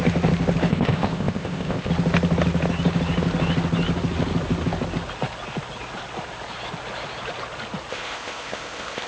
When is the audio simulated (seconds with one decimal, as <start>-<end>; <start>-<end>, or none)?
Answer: 0.7-1.9; 7.9-9.1